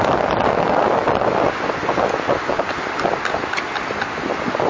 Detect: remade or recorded recorded